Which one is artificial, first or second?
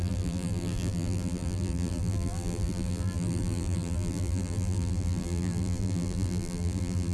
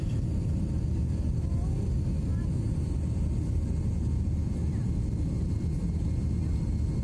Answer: first